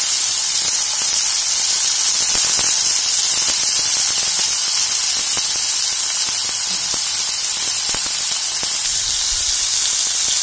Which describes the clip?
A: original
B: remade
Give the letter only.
A